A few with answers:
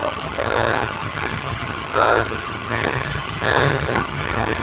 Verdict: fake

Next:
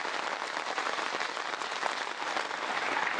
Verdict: fake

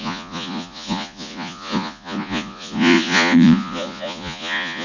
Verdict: fake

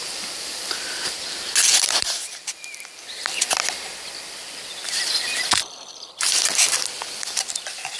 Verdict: fake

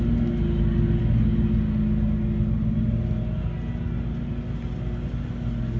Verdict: real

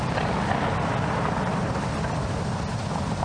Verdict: real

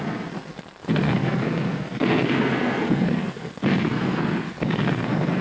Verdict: fake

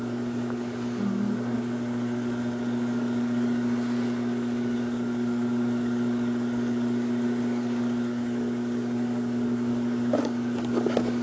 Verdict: fake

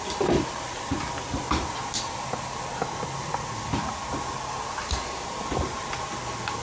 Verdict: real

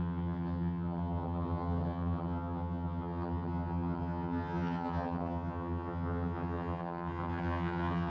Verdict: fake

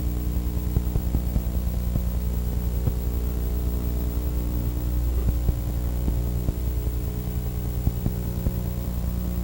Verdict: real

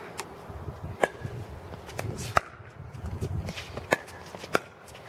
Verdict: real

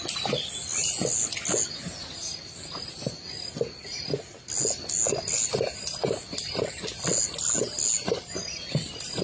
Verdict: real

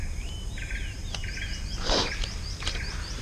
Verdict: real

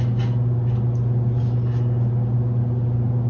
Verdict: real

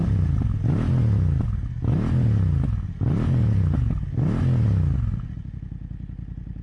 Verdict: real